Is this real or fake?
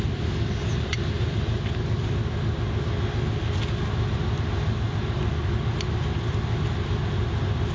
real